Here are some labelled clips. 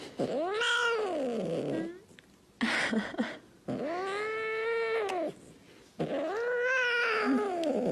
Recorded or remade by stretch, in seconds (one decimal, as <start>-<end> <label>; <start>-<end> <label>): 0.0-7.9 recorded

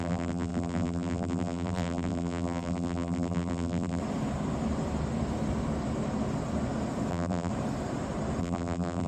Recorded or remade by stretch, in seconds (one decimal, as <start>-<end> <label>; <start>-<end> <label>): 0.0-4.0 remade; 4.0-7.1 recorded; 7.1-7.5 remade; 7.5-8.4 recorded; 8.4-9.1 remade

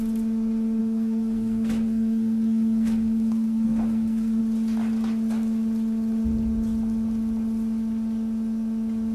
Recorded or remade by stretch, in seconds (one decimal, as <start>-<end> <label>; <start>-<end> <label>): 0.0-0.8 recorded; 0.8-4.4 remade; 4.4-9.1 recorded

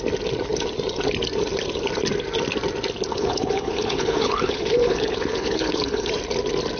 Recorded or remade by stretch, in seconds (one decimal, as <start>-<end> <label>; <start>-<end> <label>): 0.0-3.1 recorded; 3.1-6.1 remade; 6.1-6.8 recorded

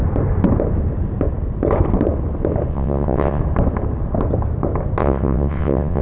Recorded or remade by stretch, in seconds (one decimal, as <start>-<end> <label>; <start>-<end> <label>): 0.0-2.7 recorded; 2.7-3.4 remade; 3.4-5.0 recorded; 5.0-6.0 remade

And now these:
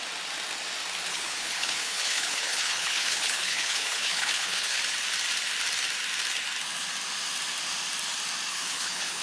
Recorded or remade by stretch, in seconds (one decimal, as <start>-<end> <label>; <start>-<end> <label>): 0.0-1.1 recorded; 1.1-4.8 remade; 4.8-8.5 recorded; 8.5-9.2 remade

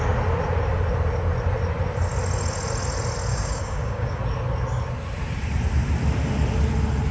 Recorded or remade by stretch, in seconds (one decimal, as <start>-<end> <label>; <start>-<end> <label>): 0.0-3.3 recorded; 3.3-4.2 remade; 4.2-7.1 recorded

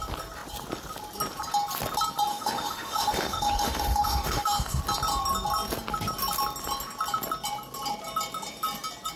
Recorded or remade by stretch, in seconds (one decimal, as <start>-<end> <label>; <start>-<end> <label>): 0.0-2.3 recorded; 2.3-4.8 remade; 4.8-9.2 recorded